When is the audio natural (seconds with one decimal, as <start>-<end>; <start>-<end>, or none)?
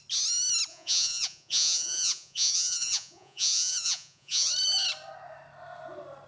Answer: 0.0-0.7; 4.5-6.3